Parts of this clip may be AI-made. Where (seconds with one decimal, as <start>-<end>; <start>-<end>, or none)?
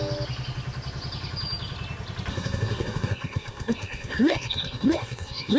2.3-5.6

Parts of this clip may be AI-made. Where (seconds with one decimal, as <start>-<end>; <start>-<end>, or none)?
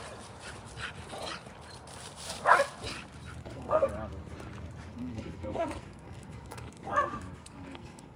3.4-3.9; 4.9-8.2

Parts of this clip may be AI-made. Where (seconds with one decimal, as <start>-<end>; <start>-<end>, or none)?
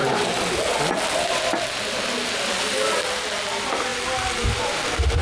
none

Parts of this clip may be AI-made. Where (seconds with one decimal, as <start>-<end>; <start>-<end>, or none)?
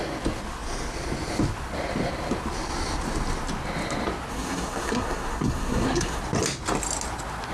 4.3-6.2